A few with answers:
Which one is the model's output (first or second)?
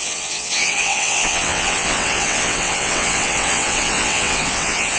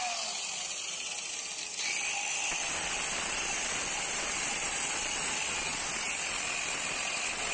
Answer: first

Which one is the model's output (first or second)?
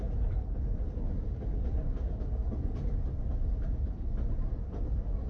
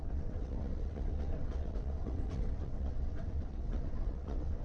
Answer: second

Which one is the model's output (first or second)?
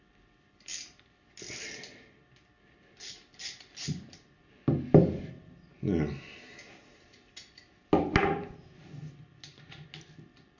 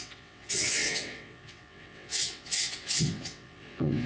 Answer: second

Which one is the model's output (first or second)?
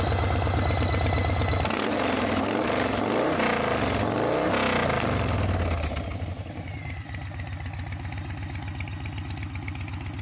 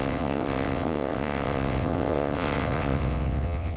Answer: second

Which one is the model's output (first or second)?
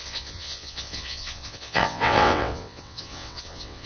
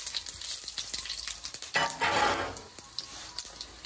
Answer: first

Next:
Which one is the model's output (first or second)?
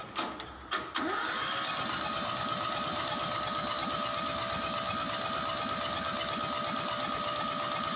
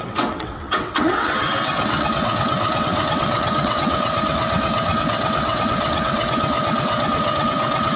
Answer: second